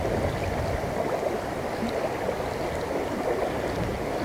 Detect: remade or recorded recorded